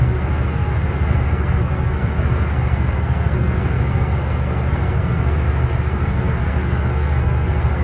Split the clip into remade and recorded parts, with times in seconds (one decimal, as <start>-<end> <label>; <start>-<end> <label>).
0.0-7.8 remade